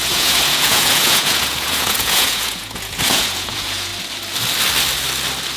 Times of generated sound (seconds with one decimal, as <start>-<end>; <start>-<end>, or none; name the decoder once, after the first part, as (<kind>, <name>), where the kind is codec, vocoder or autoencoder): 0.0-3.9 (vocoder, Vocos)